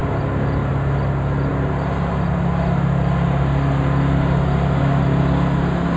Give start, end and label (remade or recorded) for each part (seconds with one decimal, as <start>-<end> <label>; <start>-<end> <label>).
0.0-6.0 recorded